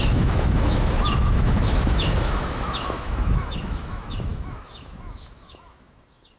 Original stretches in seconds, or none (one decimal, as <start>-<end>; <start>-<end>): none